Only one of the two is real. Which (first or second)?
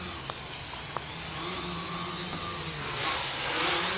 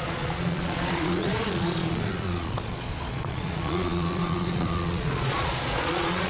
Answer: first